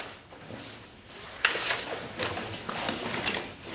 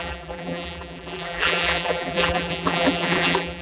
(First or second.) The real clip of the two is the first